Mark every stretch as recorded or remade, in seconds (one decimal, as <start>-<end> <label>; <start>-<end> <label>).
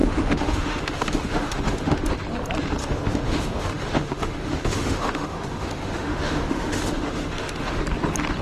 0.0-2.1 remade; 2.1-2.8 recorded; 2.8-7.8 remade; 7.8-8.4 recorded